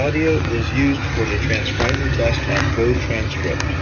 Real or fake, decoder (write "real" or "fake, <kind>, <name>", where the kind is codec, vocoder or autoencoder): real